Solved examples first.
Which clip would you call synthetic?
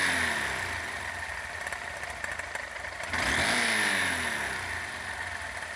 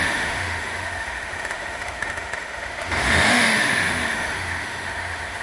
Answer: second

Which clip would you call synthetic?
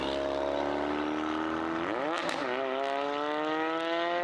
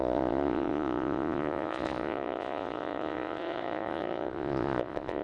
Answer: second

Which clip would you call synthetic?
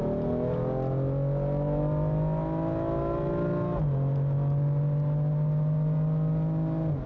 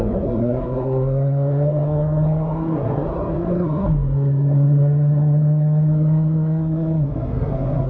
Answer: second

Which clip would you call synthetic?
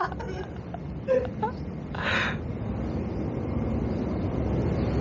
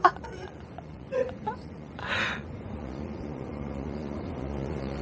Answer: second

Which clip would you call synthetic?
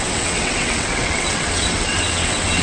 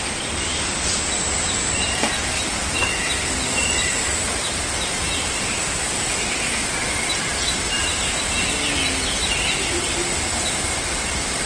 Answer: first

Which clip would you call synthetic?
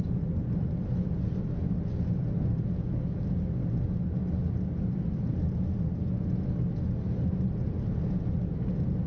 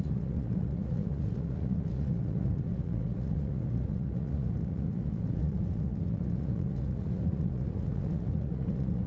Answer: second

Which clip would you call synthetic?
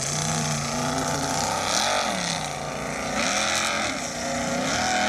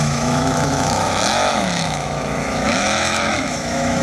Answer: second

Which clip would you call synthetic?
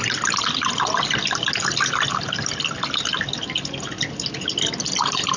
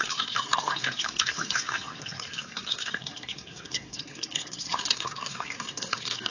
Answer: second